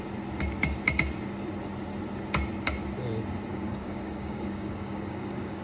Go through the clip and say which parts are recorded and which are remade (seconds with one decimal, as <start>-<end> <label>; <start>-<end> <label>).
0.0-3.5 recorded; 3.5-5.6 remade